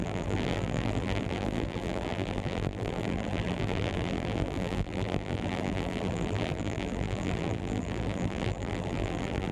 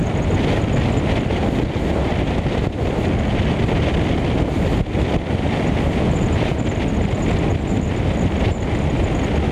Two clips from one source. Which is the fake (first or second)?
first